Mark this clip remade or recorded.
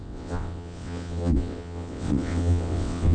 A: remade